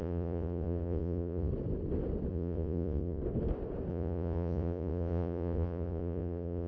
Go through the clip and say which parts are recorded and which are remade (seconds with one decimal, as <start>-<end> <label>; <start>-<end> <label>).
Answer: 0.0-1.5 remade; 1.5-2.3 recorded; 2.3-3.2 remade; 3.2-3.9 recorded; 3.9-6.7 remade